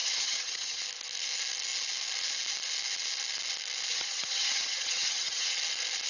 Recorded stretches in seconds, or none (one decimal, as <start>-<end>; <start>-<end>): 0.8-3.9; 5.5-6.1